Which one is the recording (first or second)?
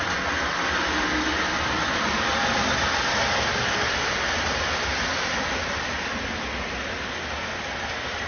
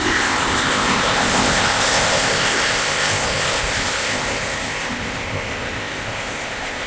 first